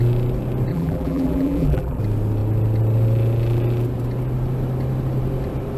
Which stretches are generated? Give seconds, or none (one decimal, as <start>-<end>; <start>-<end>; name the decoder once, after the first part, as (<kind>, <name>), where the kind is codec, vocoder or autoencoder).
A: 0.7-2.0 (vocoder, BigVGAN v2)